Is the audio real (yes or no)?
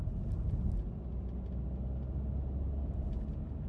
yes